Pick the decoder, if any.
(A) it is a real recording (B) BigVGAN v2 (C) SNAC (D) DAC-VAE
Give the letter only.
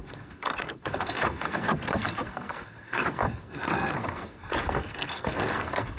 C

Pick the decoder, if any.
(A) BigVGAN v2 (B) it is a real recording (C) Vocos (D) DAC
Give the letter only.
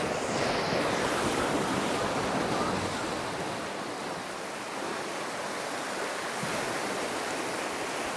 B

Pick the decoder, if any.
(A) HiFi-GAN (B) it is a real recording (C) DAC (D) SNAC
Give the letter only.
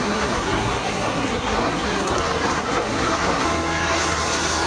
D